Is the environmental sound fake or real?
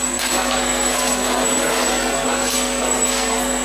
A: fake